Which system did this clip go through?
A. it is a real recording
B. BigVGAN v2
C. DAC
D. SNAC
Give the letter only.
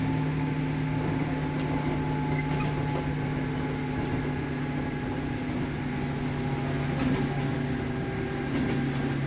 A